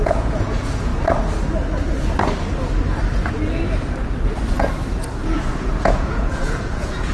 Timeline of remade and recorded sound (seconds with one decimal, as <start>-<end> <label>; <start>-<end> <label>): 0.0-0.9 remade; 0.9-5.2 recorded; 5.2-7.1 remade